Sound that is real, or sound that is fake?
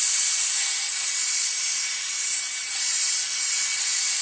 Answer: real